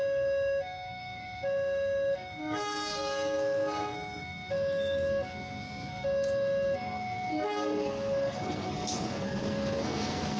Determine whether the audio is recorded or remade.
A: remade